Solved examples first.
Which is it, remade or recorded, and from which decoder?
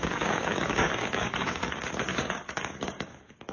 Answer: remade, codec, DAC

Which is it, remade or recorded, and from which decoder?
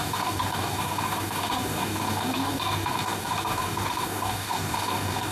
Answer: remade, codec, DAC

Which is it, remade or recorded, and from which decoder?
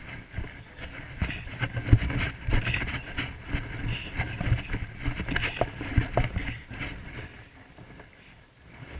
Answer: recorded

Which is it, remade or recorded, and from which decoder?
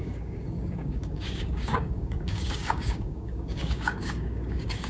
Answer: remade, codec, DAC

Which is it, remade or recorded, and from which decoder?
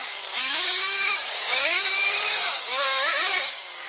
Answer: remade, codec, DAC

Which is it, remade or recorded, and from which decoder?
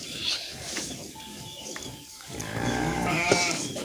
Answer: remade, codec, DAC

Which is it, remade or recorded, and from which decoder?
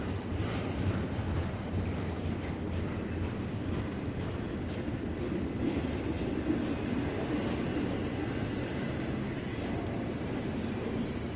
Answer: recorded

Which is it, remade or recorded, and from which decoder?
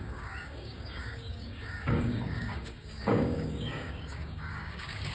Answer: remade, codec, DAC